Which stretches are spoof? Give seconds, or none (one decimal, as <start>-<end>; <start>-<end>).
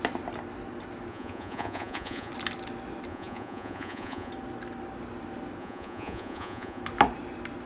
1.1-2.3; 3.1-4.3; 5.6-6.8